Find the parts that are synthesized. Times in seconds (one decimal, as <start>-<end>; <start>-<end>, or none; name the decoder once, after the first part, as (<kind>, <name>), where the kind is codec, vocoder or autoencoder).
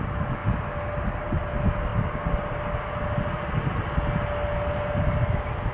none